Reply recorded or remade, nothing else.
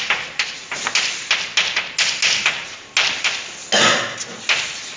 recorded